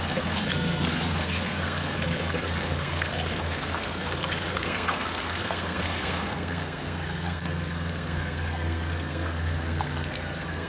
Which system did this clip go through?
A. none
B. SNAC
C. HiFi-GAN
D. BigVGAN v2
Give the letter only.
B